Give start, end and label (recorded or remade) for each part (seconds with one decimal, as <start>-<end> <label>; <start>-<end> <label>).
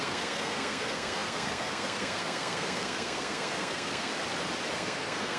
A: 0.0-4.1 remade; 4.1-4.7 recorded; 4.7-5.4 remade